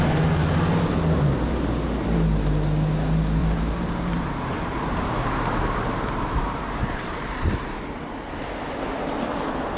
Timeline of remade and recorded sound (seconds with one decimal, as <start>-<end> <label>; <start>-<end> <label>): 0.0-3.4 recorded; 3.4-7.8 remade; 7.8-9.8 recorded